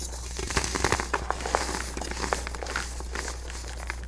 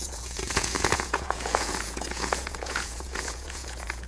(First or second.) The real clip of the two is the first